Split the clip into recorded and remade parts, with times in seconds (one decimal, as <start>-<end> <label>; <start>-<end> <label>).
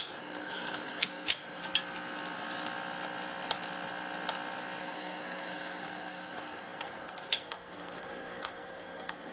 0.0-1.6 remade; 1.6-4.8 recorded; 4.8-9.3 remade